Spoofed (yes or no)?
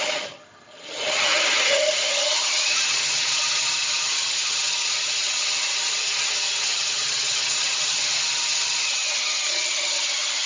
yes